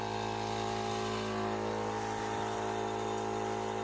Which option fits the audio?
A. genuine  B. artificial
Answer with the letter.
A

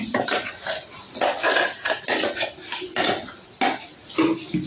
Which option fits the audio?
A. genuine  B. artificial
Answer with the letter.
A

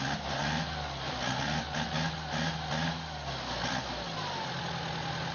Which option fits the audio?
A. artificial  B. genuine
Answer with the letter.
B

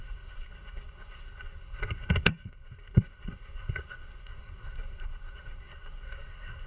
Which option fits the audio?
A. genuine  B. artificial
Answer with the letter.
B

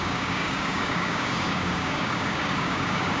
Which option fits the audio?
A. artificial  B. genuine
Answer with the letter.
A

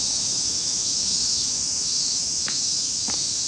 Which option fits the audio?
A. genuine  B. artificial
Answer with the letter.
B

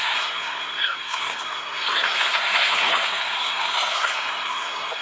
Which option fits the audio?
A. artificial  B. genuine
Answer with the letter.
A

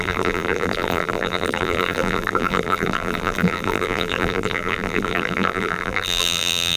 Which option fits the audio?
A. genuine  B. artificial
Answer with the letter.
B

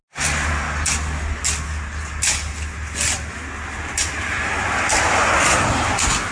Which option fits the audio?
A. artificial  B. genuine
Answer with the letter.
B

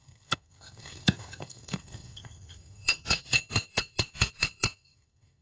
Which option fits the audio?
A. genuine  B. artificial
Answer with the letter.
B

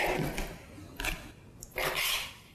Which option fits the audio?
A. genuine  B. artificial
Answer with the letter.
A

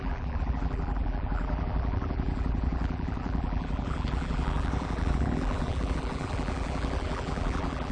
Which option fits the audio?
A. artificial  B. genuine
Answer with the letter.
A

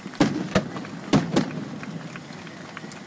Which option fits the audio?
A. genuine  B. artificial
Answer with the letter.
A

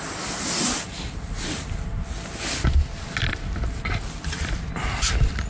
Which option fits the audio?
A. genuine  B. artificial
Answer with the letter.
A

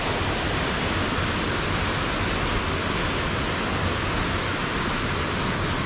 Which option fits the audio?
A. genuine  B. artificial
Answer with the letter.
A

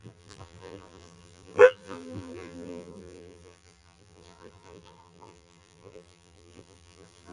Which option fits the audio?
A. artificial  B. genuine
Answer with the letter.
A